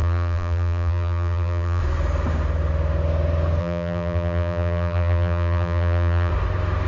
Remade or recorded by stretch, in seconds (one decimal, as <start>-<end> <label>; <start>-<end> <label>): 0.0-1.8 remade; 1.8-3.6 recorded; 3.6-6.3 remade; 6.3-6.9 recorded

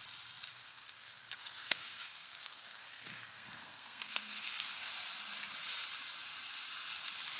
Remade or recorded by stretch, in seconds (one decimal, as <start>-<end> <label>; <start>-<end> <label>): 0.0-0.5 recorded; 0.5-4.9 remade; 4.9-7.4 recorded

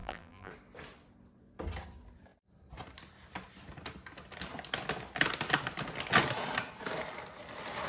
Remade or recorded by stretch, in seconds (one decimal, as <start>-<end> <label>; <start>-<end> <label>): 0.0-0.5 remade; 0.5-7.9 recorded

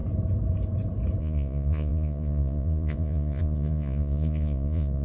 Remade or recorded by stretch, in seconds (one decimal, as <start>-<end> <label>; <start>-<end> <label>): 0.0-1.2 recorded; 1.2-5.0 remade

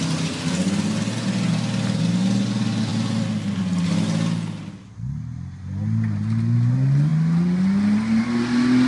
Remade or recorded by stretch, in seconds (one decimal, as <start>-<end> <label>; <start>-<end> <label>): 0.0-8.9 recorded

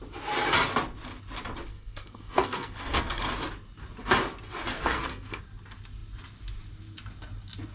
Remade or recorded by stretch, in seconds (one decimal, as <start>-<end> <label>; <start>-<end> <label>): 0.0-1.7 recorded; 1.7-3.2 remade; 3.2-4.7 recorded; 4.7-5.4 remade; 5.4-7.7 recorded

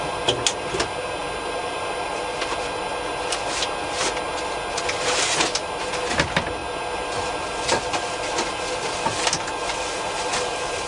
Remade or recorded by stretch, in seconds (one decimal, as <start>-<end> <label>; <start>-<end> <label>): 0.0-10.9 recorded